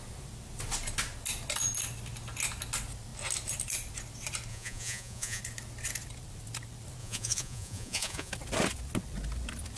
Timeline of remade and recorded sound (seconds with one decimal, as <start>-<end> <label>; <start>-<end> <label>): 0.0-4.5 recorded; 4.5-5.4 remade; 5.4-7.0 recorded; 7.0-8.3 remade; 8.3-9.8 recorded